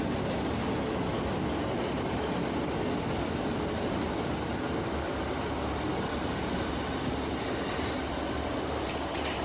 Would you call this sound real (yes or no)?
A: yes